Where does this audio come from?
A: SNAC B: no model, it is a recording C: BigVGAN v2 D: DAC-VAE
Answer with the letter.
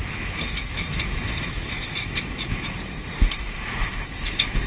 D